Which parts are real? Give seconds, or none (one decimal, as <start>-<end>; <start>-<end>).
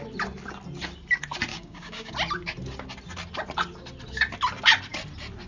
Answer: 0.0-1.5; 2.1-5.5